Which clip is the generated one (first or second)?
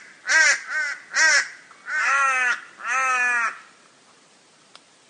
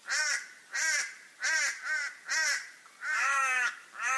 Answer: second